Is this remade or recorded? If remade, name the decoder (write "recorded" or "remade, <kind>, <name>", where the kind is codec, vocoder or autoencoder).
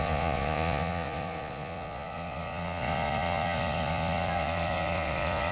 remade, vocoder, Vocos